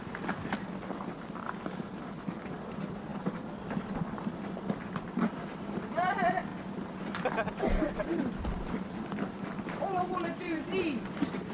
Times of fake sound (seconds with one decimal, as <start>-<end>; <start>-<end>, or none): none